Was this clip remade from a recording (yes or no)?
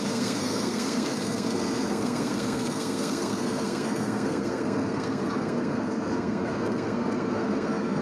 yes